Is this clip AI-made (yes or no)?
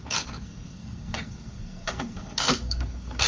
yes